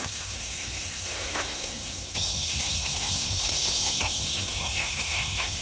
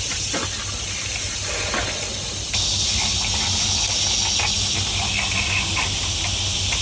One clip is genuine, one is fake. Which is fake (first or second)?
first